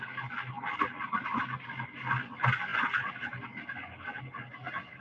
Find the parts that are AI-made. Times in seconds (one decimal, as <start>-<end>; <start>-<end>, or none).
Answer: none